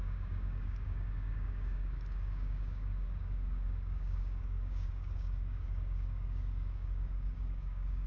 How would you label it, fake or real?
fake